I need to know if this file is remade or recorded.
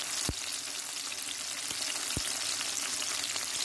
recorded